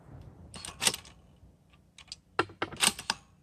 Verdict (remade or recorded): recorded